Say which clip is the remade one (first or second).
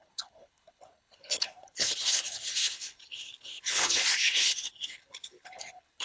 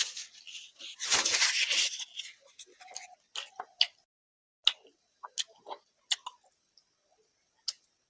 first